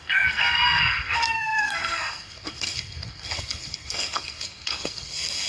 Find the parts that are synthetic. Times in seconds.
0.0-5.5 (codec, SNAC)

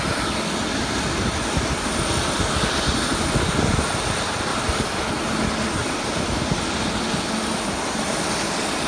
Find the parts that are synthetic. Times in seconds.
4.5-5.1 (vocoder, BigVGAN v2); 5.8-7.3; 8.1-8.9

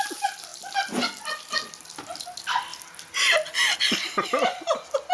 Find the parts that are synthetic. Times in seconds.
none

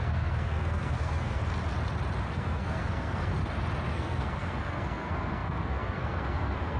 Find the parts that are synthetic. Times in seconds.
0.0-1.4 (codec, SNAC); 2.3-3.3; 3.9-6.8